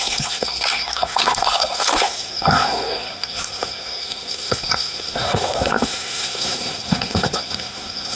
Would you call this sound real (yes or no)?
no